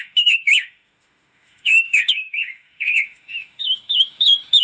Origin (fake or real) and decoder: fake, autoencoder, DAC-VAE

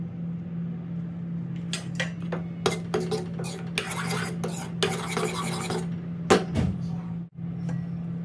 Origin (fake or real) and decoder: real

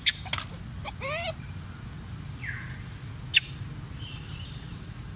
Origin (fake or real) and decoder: real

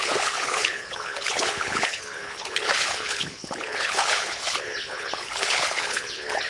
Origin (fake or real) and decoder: fake, codec, HILCodec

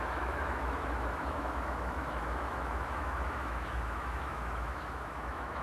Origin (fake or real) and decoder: fake, autoencoder, DAC-VAE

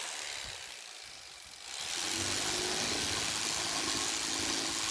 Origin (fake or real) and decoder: real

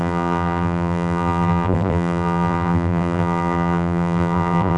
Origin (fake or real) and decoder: fake, vocoder, BigVGAN v2